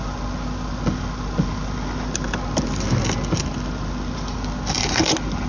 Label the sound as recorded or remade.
recorded